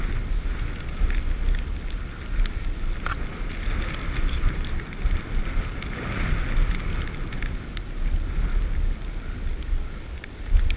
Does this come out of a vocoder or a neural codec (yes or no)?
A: no